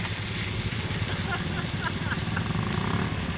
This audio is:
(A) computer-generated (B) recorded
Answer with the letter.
B